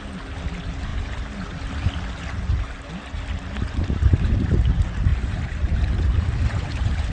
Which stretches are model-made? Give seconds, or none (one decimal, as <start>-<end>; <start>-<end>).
none